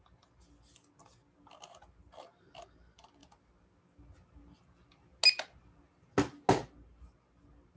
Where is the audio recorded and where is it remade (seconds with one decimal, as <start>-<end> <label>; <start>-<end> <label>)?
0.0-7.8 recorded